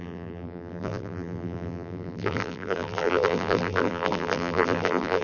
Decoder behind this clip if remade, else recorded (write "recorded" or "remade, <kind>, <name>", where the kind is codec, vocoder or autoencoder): remade, vocoder, BigVGAN v2